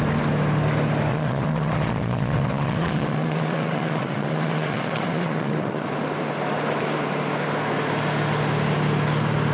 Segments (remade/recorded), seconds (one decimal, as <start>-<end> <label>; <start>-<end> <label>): 0.0-1.1 recorded; 1.1-5.9 remade; 5.9-9.5 recorded